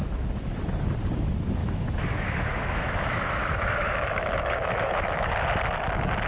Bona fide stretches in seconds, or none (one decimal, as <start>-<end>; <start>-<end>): 0.6-1.6; 5.3-6.3